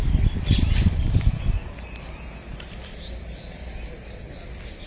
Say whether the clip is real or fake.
real